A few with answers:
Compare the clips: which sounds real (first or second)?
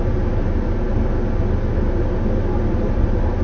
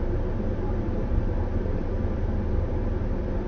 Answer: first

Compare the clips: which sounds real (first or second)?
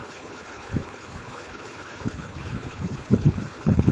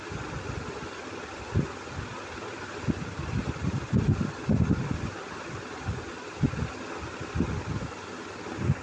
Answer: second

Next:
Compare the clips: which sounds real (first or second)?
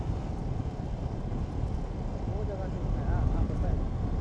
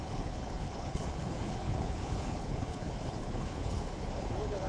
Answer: first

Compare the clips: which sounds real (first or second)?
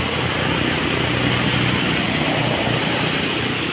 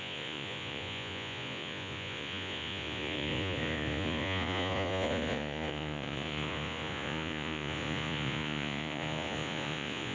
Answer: first